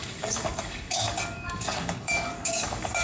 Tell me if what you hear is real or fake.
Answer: fake